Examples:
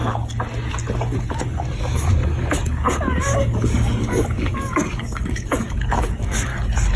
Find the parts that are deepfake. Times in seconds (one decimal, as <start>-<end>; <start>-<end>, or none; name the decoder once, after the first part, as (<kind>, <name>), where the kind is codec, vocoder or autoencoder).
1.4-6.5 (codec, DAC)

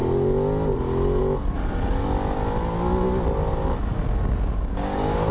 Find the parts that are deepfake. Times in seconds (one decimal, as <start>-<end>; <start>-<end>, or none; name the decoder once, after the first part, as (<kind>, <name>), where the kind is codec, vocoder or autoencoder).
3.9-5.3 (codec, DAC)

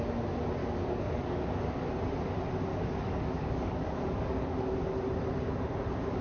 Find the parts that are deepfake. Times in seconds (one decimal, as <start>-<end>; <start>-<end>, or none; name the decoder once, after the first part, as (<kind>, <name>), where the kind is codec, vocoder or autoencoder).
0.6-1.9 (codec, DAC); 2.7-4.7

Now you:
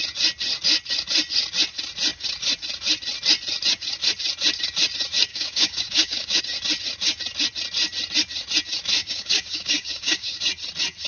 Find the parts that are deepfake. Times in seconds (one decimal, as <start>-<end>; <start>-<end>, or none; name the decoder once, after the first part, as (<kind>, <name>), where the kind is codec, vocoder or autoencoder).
5.3-6.4 (codec, DAC); 9.0-10.4